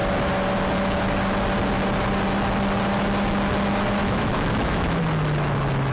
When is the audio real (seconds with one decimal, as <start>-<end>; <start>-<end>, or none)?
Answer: 0.0-4.0; 5.0-5.9